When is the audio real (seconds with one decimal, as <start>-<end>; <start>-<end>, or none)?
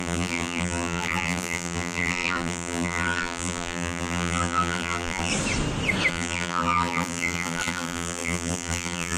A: 5.3-6.1